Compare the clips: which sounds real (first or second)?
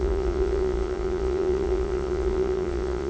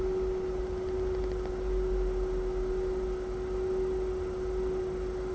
second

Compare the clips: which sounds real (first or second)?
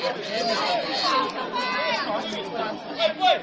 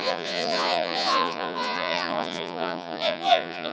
first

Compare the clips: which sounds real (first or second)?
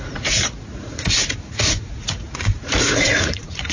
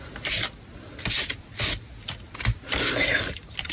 second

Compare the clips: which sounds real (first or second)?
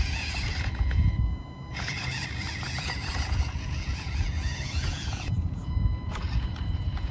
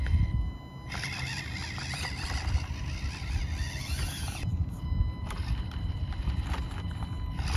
second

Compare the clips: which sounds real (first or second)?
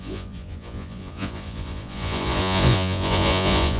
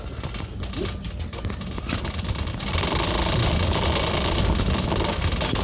second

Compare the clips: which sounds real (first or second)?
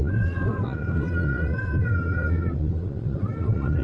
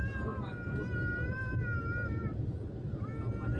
second